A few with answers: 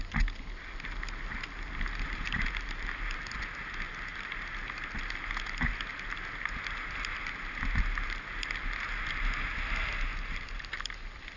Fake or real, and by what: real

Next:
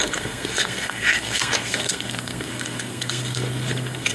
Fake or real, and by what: fake, codec, SNAC